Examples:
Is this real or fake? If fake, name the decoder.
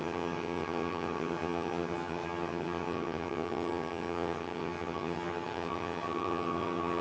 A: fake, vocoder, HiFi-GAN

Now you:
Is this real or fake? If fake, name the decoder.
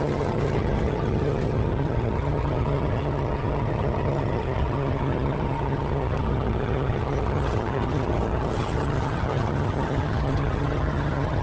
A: fake, vocoder, HiFi-GAN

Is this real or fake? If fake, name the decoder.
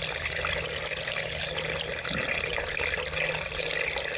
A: real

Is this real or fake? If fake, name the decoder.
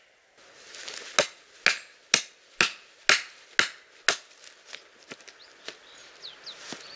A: real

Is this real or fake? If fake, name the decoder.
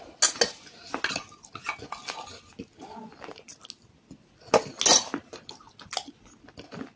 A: real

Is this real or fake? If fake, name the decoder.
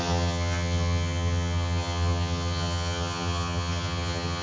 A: fake, vocoder, HiFi-GAN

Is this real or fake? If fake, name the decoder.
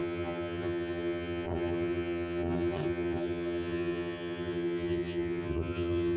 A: fake, vocoder, HiFi-GAN